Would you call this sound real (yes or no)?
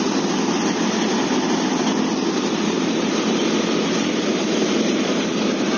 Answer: yes